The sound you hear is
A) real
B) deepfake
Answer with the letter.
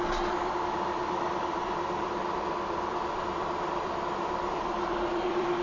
B